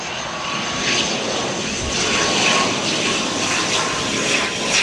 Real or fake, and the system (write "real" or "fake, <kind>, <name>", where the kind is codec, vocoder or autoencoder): real